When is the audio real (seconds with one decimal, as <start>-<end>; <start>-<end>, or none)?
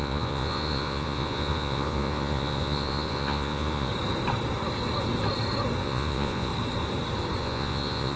3.9-5.8; 6.5-7.4